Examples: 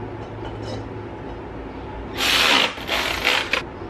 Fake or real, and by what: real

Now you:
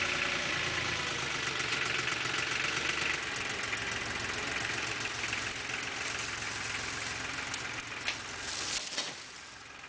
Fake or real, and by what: real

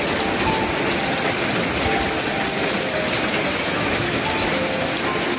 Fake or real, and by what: real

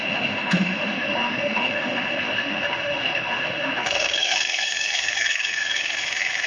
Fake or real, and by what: fake, autoencoder, DAC-VAE